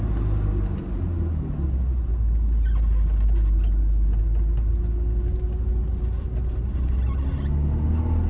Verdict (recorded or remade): recorded